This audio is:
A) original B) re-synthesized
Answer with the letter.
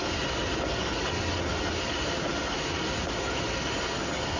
A